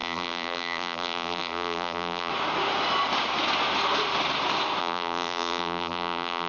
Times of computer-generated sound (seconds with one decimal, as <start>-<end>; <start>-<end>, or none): 0.0-2.3; 4.8-6.5